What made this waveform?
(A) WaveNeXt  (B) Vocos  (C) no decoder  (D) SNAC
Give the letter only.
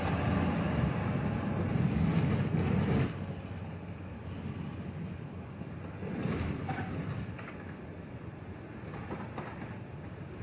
C